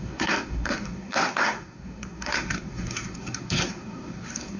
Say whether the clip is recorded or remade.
remade